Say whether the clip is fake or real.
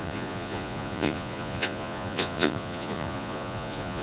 fake